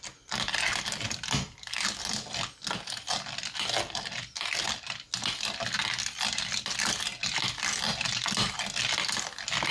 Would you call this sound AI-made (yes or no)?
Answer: no